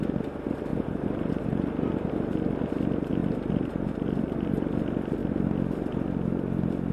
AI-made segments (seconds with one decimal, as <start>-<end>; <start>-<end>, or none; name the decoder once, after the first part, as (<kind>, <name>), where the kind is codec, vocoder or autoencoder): 0.7-1.4 (vocoder, BigVGAN v2); 3.2-4.6